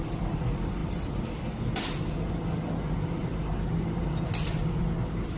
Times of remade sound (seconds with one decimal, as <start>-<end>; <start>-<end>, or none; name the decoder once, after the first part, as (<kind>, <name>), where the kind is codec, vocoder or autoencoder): none